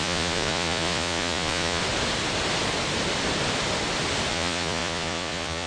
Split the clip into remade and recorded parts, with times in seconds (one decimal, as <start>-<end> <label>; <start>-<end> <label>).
0.0-1.8 remade; 1.8-4.3 recorded; 4.3-5.7 remade